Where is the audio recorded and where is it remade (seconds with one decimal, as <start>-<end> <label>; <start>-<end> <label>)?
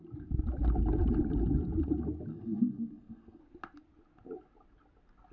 0.0-2.3 recorded; 2.3-3.4 remade; 3.4-5.3 recorded